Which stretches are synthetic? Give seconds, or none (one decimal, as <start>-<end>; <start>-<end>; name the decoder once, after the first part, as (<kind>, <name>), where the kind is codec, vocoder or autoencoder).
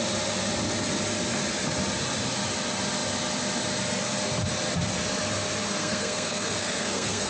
5.8-7.3 (codec, SNAC)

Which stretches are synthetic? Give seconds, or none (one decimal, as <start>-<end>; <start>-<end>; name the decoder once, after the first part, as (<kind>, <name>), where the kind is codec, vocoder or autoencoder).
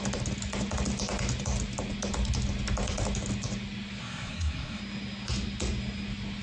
4.0-4.8 (codec, SNAC)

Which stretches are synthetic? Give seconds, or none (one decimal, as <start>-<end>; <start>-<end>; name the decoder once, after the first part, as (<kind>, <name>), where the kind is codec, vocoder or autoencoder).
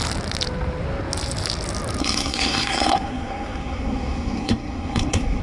2.0-5.4 (codec, SNAC)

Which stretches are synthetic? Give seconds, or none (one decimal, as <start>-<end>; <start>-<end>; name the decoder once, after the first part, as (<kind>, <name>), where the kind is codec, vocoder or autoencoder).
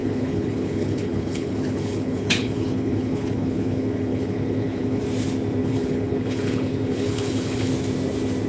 0.0-5.0 (codec, HILCodec); 5.6-7.7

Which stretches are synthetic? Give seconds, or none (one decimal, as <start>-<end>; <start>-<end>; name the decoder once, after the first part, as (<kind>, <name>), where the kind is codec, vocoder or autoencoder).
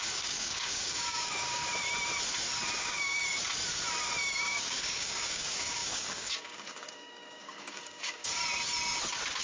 0.0-1.6 (codec, DAC); 2.8-3.2; 4.3-8.4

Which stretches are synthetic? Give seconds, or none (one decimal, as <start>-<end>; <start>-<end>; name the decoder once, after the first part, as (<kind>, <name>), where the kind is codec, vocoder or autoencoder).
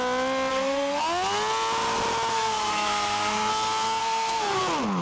0.5-1.0 (codec, SNAC); 2.3-3.5; 4.0-4.6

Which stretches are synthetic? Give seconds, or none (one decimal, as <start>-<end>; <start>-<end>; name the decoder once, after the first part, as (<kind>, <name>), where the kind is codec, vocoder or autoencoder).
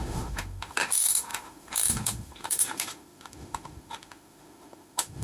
0.0-5.2 (autoencoder, DAC-VAE)